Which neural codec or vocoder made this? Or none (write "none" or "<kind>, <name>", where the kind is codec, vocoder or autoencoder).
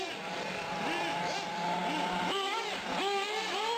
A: none